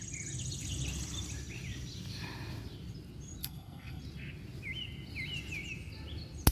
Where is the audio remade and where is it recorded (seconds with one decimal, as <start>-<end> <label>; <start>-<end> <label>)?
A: 0.0-3.4 recorded; 3.4-4.0 remade; 4.0-6.5 recorded